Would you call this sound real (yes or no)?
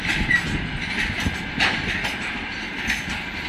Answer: yes